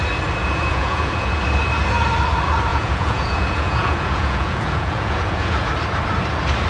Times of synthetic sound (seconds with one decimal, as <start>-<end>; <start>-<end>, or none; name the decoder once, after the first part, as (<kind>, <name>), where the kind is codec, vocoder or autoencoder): 0.4-1.4 (vocoder, Vocos); 2.7-5.7